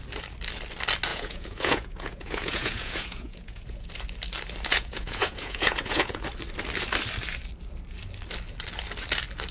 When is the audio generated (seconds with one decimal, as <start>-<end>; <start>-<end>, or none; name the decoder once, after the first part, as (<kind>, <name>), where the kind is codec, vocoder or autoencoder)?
1.1-3.9 (vocoder, Vocos); 4.7-6.2